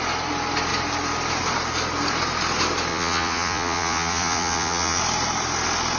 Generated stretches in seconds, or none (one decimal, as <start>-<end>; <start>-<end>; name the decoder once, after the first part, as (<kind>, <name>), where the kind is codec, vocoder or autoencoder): 2.9-5.0 (vocoder, Vocos)